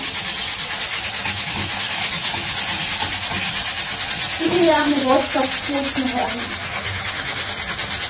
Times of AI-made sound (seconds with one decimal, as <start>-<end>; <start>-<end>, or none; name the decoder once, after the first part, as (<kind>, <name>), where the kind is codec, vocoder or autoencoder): 0.9-2.6 (autoencoder, DAC-VAE); 4.8-5.4; 6.6-7.5